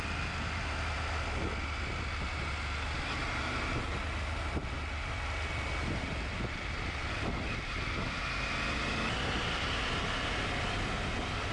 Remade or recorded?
recorded